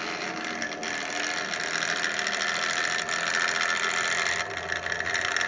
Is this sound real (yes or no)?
yes